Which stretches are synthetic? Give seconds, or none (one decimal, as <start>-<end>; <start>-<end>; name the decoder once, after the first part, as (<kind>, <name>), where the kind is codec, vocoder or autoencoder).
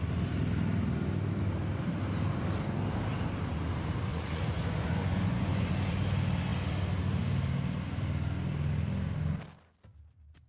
4.1-5.7 (vocoder, Vocos)